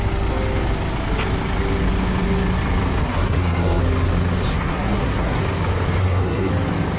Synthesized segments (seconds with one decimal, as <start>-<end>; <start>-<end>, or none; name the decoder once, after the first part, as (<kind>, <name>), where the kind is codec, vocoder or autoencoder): 3.0-3.8 (codec, SNAC); 4.5-5.4; 6.0-6.5